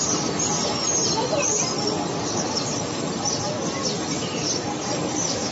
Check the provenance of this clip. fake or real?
real